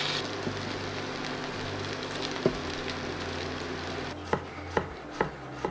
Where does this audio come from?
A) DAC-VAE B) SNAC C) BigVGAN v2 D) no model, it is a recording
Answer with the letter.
D